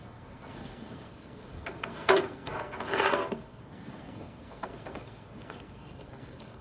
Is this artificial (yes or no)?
yes